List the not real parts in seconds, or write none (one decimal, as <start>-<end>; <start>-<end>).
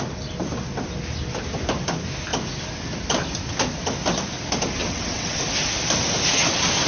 4.8-5.4